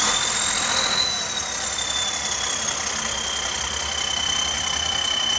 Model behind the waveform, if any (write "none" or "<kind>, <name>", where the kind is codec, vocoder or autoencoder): none